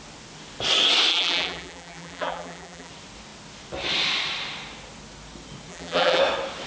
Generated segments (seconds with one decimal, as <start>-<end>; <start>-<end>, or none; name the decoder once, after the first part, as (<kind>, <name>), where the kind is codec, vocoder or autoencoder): 1.1-2.9 (vocoder, BigVGAN v2); 5.7-6.2